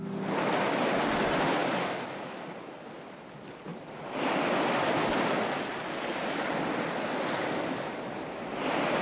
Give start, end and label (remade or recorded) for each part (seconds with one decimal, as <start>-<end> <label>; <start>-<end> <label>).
0.0-9.0 recorded